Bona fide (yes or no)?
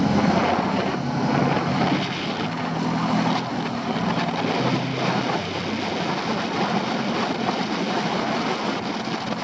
yes